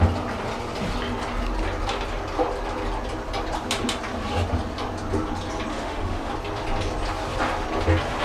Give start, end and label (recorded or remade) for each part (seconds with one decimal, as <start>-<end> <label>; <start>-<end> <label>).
0.0-5.7 recorded; 5.7-6.3 remade; 6.3-8.2 recorded